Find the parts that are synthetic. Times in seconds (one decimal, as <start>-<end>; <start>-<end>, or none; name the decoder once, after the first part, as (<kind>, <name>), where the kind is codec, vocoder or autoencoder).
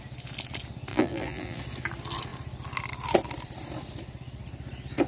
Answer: 0.9-1.6 (vocoder, BigVGAN v2)